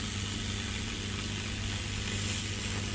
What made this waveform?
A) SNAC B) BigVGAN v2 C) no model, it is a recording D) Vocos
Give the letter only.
C